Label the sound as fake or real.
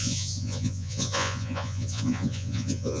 fake